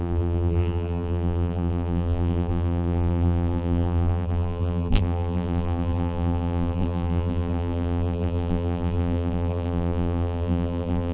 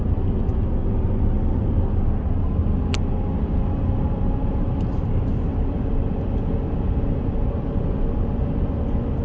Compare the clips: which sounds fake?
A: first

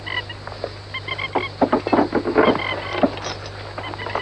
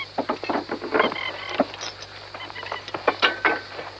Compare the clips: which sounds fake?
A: second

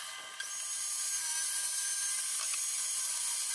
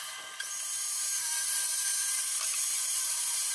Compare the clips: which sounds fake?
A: second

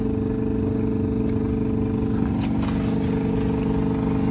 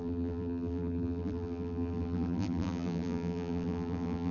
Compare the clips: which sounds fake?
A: second